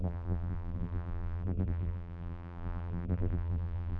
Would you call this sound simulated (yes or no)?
yes